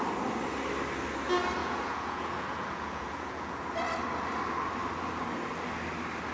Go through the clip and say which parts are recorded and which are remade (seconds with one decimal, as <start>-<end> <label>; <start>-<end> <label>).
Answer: 0.0-1.6 recorded; 1.6-3.6 remade; 3.6-6.3 recorded